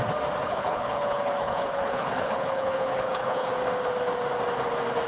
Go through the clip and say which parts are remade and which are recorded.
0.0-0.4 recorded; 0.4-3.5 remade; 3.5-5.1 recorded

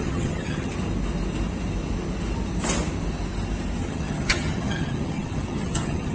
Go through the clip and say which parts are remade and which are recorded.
0.0-0.7 remade; 0.7-3.8 recorded; 3.8-6.1 remade

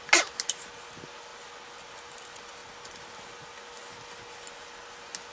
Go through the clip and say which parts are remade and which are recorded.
0.0-5.3 recorded